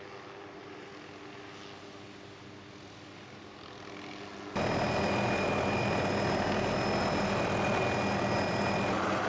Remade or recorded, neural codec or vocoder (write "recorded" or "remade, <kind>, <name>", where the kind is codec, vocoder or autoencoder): recorded